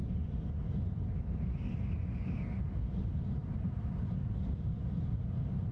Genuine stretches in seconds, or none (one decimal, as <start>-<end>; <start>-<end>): 0.5-3.4; 3.9-5.7